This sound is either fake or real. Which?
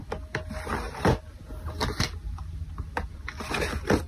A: real